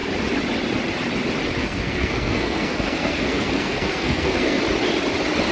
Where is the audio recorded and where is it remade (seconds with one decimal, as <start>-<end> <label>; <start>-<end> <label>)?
0.0-1.6 recorded; 1.6-4.6 remade; 4.6-5.5 recorded